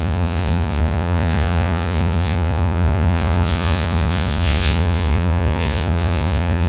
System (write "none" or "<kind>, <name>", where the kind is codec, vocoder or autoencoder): vocoder, Vocos